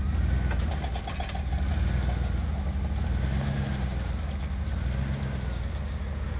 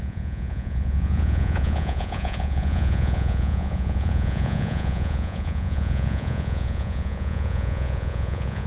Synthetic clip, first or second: second